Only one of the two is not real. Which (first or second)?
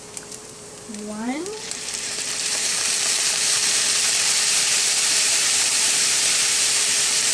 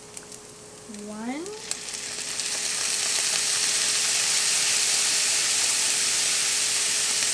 first